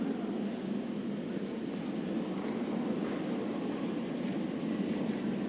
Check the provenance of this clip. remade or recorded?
recorded